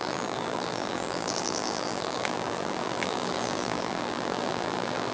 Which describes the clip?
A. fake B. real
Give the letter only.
A